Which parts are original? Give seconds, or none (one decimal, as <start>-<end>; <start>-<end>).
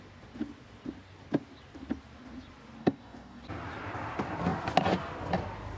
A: 0.0-2.8; 3.4-5.8